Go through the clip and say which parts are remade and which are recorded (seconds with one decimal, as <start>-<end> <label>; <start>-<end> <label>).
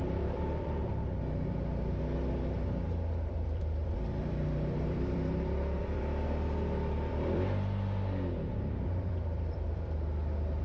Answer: 0.0-1.0 remade; 1.0-3.3 recorded; 3.3-10.6 remade